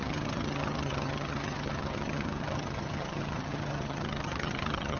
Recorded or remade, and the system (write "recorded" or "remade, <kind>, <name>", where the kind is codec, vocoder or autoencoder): remade, vocoder, HiFi-GAN